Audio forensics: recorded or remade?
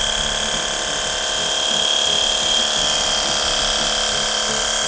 recorded